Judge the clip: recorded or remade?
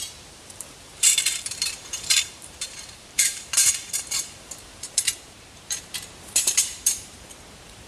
remade